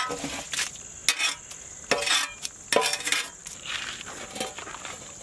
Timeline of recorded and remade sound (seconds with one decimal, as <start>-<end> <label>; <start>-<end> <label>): 0.0-3.4 recorded; 3.4-4.2 remade; 4.2-5.2 recorded